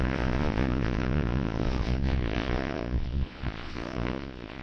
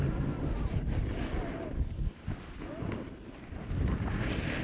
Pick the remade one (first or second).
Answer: first